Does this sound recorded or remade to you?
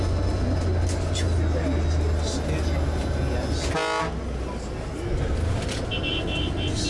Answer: recorded